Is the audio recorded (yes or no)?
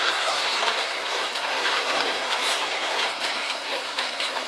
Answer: no